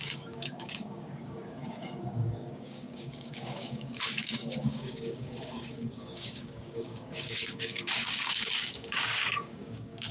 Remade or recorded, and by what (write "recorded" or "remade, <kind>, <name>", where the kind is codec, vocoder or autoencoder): remade, codec, DAC